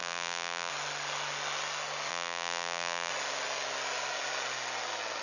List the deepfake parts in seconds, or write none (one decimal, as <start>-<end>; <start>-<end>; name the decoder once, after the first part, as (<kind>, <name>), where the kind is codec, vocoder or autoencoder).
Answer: 0.0-0.7 (vocoder, BigVGAN v2); 2.1-3.1